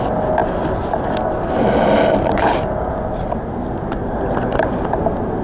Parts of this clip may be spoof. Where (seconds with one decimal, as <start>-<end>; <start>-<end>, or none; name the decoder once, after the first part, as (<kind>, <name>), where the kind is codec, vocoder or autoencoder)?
none